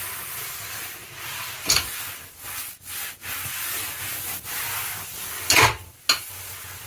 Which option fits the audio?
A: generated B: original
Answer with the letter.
B